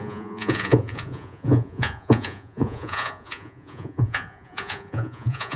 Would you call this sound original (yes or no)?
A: no